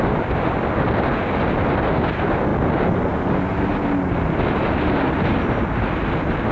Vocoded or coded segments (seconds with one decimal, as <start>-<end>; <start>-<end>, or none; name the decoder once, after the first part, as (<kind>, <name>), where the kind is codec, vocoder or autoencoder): none